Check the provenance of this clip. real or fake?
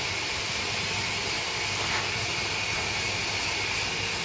real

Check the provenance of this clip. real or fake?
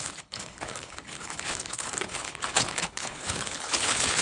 fake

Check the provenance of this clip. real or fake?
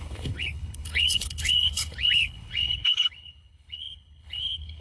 fake